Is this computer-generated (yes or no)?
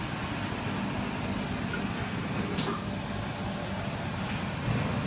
no